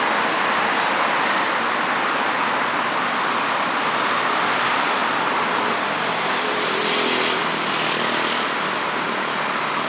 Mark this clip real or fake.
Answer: real